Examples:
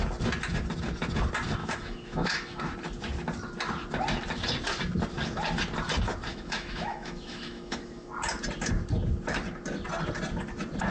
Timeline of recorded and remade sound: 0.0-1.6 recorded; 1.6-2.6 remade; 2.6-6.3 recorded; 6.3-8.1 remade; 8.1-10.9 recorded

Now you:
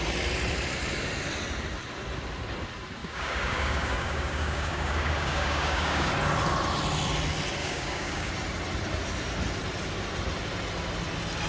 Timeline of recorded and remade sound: 0.0-3.0 recorded; 3.0-6.1 remade; 6.1-7.6 recorded; 7.6-8.3 remade; 8.3-11.5 recorded

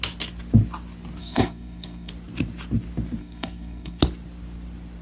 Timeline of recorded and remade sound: 0.0-1.2 recorded; 1.2-2.1 remade; 2.1-3.2 recorded; 3.2-4.0 remade; 4.0-5.0 recorded

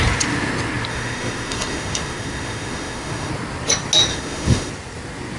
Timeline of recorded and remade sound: 0.0-0.9 recorded; 0.9-3.3 remade; 3.3-4.1 recorded; 4.1-4.7 remade; 4.7-5.4 recorded

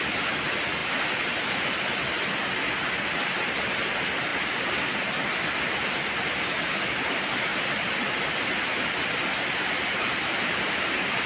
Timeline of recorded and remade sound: 0.0-11.3 recorded

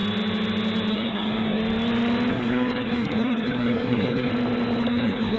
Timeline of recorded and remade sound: 0.0-0.9 recorded; 0.9-1.6 remade; 1.6-2.3 recorded; 2.3-4.3 remade; 4.3-4.8 recorded; 4.8-5.4 remade

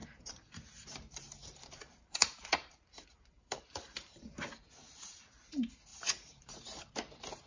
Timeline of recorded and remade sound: 0.0-4.5 remade; 4.5-5.9 recorded; 5.9-6.9 remade; 6.9-7.5 recorded

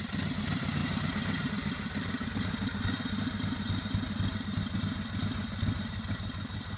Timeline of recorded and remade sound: 0.0-6.8 recorded